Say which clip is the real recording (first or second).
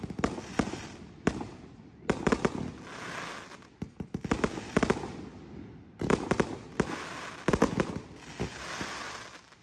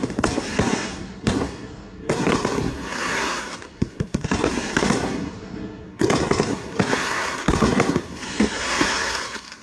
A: first